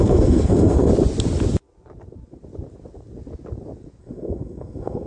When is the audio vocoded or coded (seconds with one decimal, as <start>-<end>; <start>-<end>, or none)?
0.0-0.9; 4.0-5.1